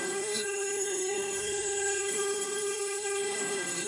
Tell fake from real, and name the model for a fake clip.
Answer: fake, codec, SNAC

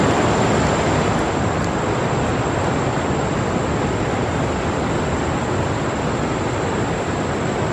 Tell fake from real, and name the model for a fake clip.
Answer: real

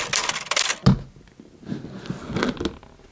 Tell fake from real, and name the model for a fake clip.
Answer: real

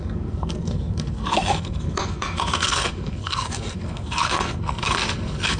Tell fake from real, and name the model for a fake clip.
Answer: fake, codec, SNAC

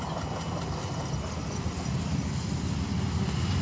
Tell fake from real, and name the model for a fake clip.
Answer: real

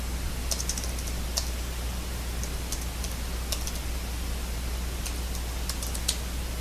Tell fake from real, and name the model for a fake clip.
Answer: real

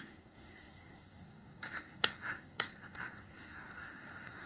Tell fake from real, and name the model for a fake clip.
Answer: fake, codec, SNAC